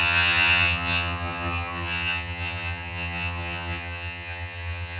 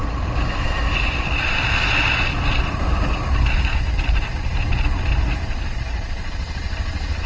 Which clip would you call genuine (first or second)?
second